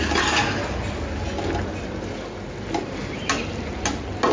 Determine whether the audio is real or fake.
real